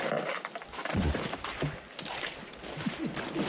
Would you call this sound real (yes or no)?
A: yes